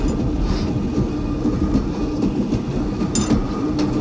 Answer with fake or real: real